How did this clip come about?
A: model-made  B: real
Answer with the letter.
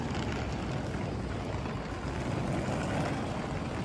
B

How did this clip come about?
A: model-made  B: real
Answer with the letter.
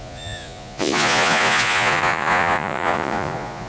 A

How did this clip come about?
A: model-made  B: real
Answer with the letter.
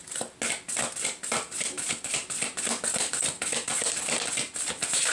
B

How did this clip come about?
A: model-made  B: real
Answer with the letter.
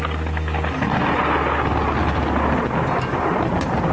B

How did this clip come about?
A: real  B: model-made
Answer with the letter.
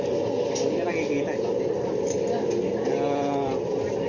A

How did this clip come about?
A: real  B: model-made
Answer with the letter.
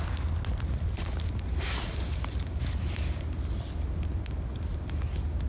A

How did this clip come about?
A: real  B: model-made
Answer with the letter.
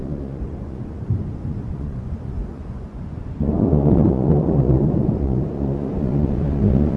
B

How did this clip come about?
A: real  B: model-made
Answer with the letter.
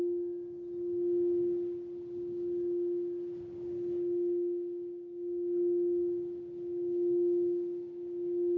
A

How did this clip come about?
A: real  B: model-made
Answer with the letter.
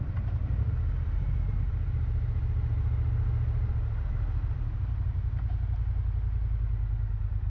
A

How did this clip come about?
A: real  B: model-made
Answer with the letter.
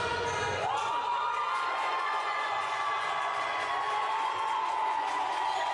B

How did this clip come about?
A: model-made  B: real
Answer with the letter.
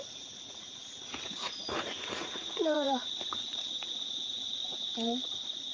A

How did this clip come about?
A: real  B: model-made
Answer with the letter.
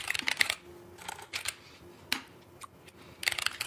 A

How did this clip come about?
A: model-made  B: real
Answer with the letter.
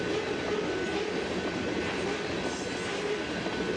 B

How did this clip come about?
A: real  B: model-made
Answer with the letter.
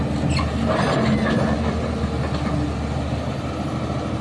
A